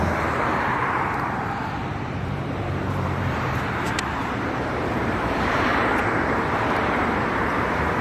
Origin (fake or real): fake